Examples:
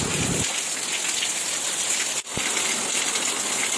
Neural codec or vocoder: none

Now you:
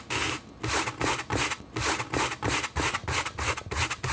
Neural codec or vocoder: none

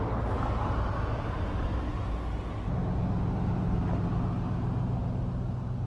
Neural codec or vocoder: none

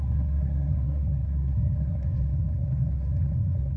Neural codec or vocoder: codec, SNAC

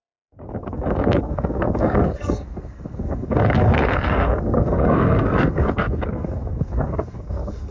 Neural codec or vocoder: codec, SNAC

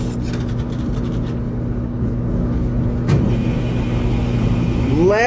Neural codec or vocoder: none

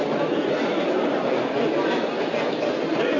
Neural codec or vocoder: none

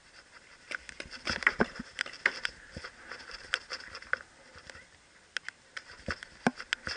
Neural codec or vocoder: none